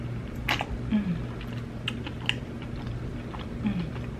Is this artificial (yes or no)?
no